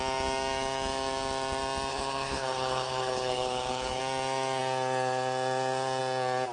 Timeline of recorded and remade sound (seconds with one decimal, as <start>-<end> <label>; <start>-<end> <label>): 0.0-1.9 recorded; 1.9-4.0 remade; 4.0-6.5 recorded